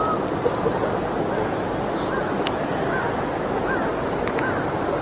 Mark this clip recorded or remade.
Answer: recorded